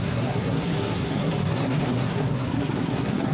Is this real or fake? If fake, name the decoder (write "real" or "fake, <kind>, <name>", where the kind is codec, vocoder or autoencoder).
fake, codec, SNAC